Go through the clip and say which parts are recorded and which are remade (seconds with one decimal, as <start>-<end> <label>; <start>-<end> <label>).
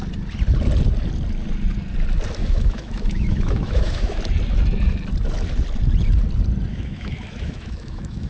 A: 0.0-2.4 recorded; 2.4-4.2 remade; 4.2-6.7 recorded; 6.7-8.3 remade